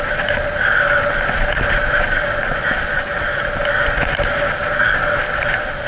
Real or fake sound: real